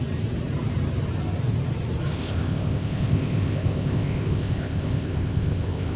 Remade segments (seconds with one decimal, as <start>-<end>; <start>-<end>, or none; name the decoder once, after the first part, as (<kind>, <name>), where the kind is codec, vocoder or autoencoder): 2.1-6.0 (codec, ZipCodec)